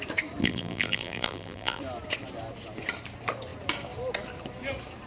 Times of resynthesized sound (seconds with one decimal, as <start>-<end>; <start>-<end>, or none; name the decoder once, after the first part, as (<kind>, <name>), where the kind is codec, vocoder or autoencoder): 0.4-1.8 (vocoder, BigVGAN v2)